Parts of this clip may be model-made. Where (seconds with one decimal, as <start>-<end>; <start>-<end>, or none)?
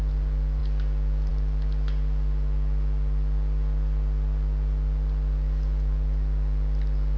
none